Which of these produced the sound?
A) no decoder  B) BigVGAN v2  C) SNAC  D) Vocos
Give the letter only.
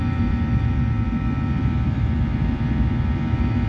B